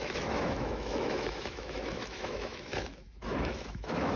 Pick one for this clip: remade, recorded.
remade